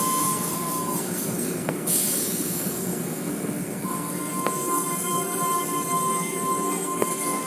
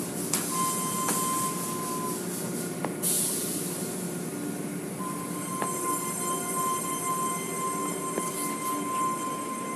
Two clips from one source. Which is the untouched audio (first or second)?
second